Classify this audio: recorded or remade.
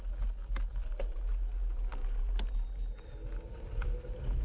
recorded